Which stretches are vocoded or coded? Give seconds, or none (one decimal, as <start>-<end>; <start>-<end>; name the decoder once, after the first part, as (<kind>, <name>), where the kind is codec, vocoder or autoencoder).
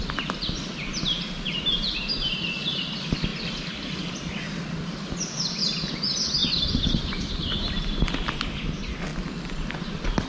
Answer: 3.3-5.0 (vocoder, BigVGAN v2); 6.4-7.3